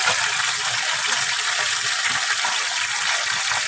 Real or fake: real